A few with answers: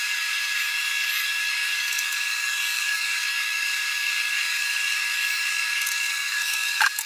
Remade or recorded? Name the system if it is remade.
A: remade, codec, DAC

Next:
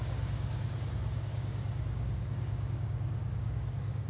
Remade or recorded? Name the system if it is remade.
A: remade, codec, DAC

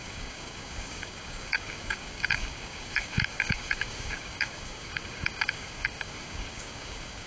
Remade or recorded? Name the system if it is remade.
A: remade, codec, DAC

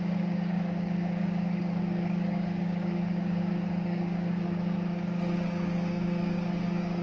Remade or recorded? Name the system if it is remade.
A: remade, codec, DAC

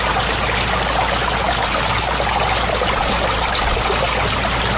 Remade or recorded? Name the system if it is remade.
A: recorded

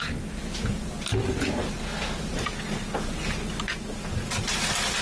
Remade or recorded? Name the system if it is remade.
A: recorded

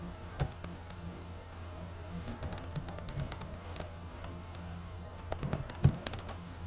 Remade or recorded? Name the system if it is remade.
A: remade, codec, DAC